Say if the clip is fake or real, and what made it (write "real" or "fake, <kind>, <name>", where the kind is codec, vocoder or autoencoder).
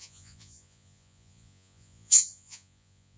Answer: fake, vocoder, Vocos